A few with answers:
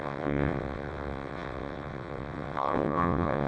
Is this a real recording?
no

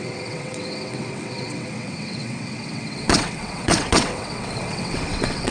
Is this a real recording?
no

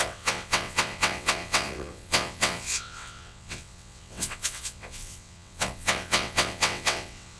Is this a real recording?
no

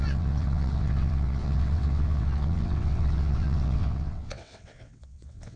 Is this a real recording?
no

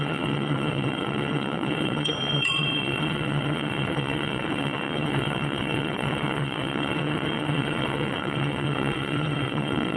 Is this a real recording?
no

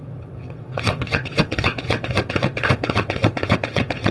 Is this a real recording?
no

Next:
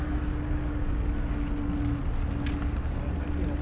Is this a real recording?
yes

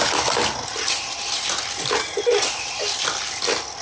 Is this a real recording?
yes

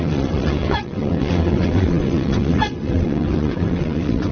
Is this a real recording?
no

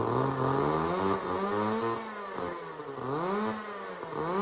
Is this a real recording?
yes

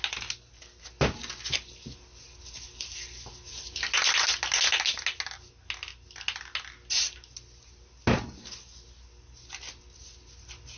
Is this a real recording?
yes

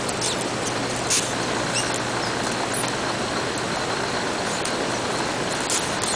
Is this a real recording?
yes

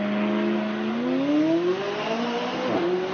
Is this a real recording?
yes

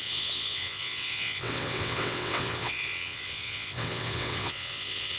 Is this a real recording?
no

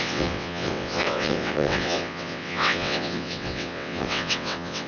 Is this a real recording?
no